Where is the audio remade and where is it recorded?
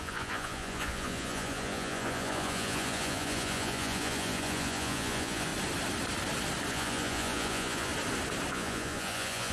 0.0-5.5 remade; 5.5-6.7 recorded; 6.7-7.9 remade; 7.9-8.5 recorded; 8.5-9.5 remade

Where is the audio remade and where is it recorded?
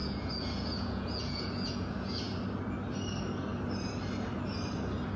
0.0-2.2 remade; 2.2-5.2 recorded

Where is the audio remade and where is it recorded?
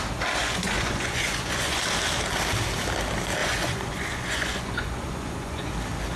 0.0-0.4 recorded; 0.4-1.8 remade; 1.8-3.4 recorded; 3.4-5.7 remade; 5.7-6.2 recorded